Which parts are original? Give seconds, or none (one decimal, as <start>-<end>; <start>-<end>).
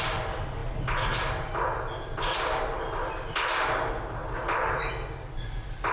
0.0-5.9